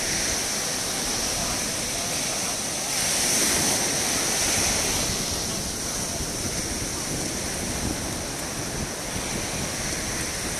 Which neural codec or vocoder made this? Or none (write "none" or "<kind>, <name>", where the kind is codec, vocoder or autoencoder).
none